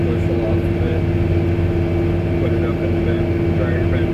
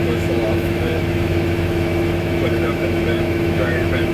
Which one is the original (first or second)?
first